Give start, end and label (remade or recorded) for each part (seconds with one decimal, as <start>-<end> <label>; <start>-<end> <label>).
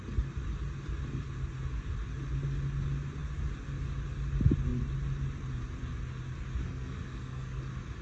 0.0-6.6 recorded; 6.6-7.6 remade; 7.6-8.0 recorded